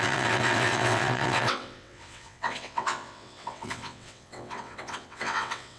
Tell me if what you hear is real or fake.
fake